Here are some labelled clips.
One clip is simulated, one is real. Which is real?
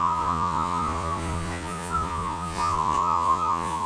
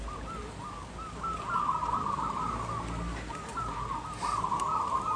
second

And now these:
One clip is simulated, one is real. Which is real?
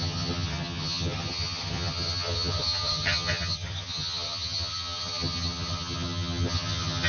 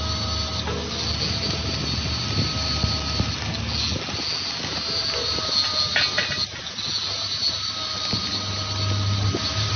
second